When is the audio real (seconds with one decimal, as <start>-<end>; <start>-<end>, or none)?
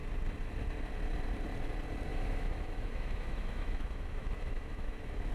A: 0.0-2.1